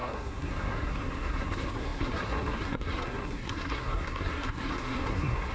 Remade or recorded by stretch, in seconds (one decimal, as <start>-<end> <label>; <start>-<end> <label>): 0.0-5.5 remade